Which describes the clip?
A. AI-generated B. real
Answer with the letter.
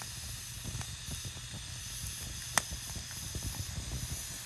B